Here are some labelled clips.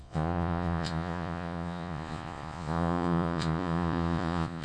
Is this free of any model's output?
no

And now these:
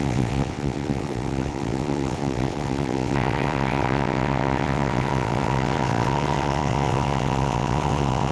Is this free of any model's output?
no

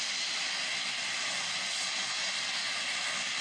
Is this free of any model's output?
yes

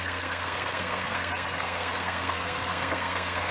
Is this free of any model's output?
no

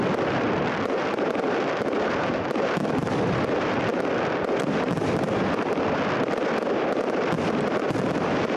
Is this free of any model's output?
yes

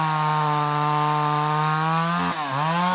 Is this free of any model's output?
yes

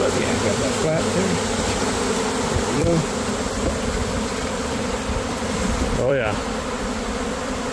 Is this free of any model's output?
no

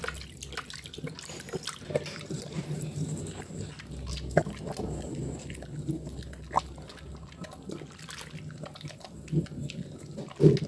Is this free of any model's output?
yes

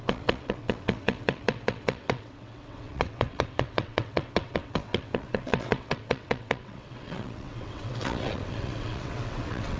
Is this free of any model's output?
no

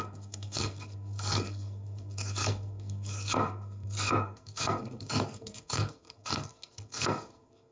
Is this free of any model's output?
no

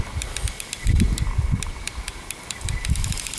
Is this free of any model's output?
yes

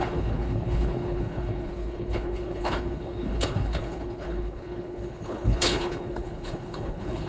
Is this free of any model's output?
no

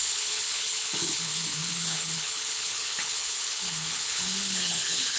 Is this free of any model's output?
no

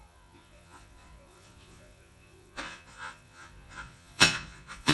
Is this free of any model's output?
no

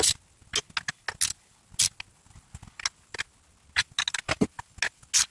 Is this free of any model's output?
yes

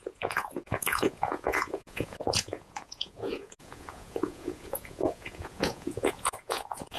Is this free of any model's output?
no